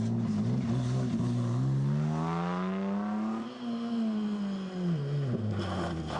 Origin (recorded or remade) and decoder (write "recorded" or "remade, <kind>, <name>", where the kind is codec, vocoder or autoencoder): recorded